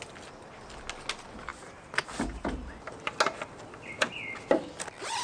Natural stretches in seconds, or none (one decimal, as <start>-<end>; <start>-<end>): 0.0-5.2